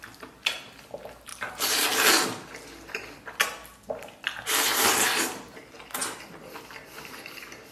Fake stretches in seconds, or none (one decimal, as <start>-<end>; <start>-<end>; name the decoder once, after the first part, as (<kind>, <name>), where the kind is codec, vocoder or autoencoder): 1.3-1.9 (vocoder, BigVGAN v2)

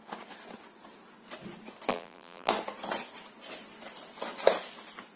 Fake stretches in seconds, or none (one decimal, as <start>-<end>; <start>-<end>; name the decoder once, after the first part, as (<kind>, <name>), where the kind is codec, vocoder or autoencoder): 1.9-2.5 (vocoder, BigVGAN v2)

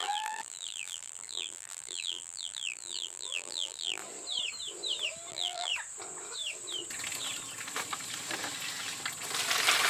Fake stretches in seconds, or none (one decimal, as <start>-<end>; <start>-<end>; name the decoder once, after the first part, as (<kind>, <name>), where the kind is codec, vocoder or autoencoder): 0.0-4.0 (vocoder, BigVGAN v2); 5.3-5.7

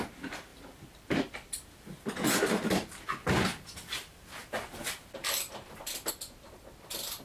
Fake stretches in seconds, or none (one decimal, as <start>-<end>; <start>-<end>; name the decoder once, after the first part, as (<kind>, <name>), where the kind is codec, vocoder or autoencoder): 0.5-2.5 (vocoder, BigVGAN v2); 3.2-6.1

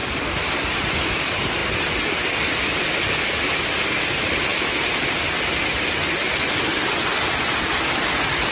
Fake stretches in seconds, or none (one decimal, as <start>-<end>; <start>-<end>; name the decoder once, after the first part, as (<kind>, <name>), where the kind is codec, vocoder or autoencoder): 0.0-0.5 (vocoder, BigVGAN v2)

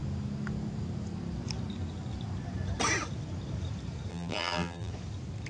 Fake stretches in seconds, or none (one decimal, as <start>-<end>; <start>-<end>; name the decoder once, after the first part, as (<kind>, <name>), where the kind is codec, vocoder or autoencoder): 4.1-4.9 (vocoder, BigVGAN v2)

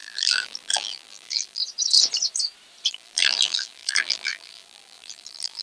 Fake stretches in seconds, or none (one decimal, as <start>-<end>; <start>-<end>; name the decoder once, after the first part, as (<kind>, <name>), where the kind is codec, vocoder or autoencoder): 0.0-1.6 (vocoder, BigVGAN v2); 2.9-5.6

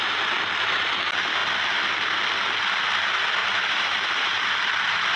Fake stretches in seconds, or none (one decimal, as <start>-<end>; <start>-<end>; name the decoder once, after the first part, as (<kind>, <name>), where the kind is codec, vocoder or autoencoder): 3.4-4.5 (vocoder, BigVGAN v2)